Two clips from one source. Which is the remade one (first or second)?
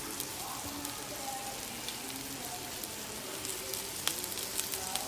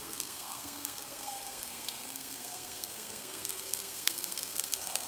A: second